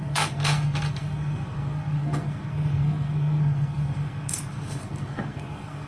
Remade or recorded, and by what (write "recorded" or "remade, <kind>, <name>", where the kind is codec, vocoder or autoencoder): remade, codec, SNAC